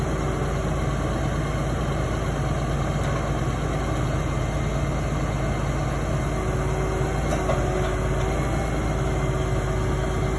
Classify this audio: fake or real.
real